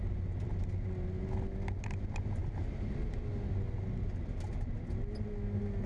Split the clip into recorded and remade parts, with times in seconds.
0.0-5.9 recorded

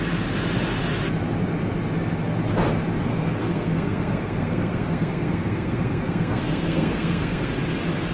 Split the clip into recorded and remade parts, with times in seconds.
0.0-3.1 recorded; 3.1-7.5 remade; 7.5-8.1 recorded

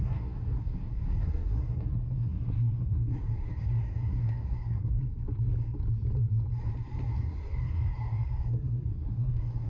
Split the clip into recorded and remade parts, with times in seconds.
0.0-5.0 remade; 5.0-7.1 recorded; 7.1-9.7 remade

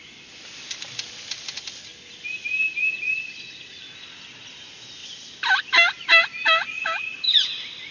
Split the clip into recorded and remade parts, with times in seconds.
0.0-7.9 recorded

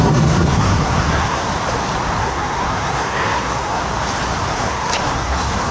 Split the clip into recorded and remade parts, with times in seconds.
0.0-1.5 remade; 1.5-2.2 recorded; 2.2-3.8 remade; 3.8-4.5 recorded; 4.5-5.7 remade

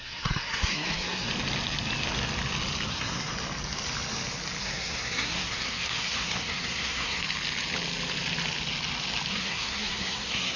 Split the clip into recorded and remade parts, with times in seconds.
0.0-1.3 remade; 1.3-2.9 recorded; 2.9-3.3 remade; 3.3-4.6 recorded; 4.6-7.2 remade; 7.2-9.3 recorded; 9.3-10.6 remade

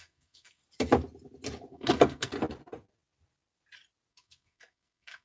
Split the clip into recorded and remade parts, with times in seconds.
0.0-0.6 remade; 0.6-1.7 recorded; 1.7-2.3 remade; 2.3-4.1 recorded; 4.1-5.2 remade